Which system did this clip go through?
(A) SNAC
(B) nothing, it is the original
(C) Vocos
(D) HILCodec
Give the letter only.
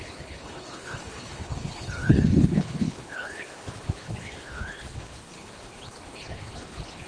D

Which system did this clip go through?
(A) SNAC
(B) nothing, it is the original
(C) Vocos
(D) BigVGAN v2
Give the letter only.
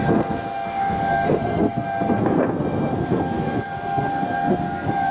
A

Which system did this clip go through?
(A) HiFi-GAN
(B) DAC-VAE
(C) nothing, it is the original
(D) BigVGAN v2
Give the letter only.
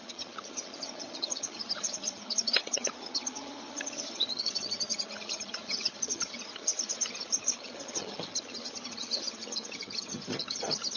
A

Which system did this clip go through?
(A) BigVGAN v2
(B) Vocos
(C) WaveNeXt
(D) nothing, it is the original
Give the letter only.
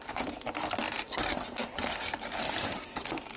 D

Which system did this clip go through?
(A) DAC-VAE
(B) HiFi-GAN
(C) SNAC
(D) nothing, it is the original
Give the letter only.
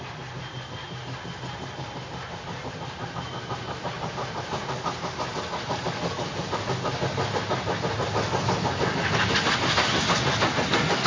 D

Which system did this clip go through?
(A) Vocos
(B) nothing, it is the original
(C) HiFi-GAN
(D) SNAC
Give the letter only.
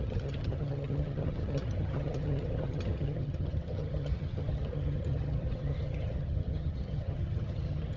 C